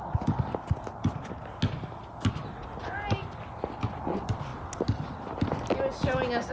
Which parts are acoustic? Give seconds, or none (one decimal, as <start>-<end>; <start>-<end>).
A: 0.0-6.5